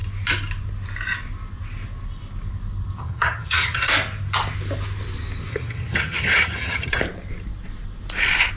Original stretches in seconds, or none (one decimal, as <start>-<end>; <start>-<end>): 0.0-3.0; 3.9-5.5; 7.0-8.6